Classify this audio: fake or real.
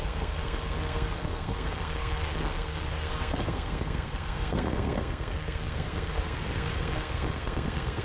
fake